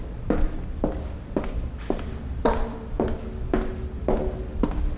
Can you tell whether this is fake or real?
real